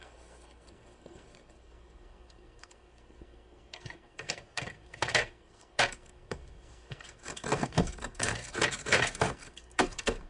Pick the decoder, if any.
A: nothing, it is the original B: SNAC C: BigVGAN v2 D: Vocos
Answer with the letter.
B